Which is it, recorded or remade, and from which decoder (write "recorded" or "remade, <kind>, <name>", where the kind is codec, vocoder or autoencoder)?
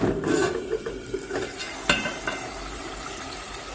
recorded